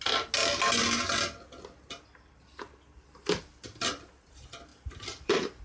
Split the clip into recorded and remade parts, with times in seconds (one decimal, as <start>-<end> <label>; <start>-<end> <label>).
0.0-4.7 recorded; 4.7-5.6 remade